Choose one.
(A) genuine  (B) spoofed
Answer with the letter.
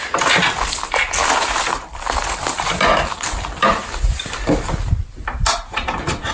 A